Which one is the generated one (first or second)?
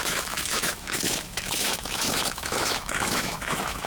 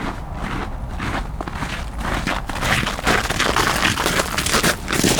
first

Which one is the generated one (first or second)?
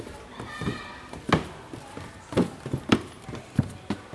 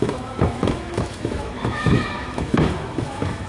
second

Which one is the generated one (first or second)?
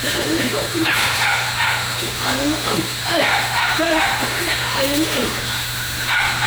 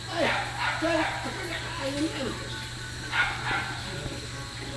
first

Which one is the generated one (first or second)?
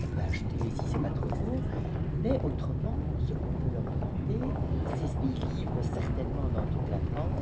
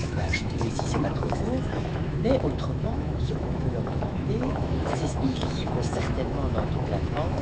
second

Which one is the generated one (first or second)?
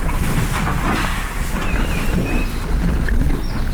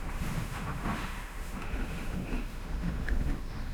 second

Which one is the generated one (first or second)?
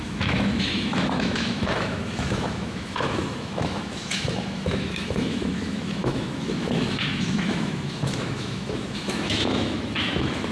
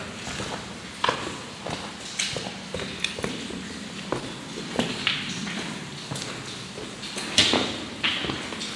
first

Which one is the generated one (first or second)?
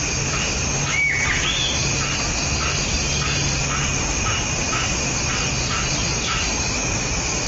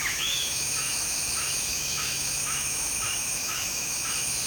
second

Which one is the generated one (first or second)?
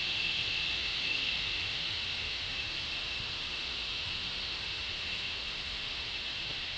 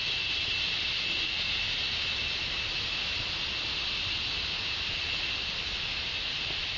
first